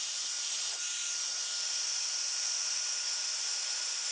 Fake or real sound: fake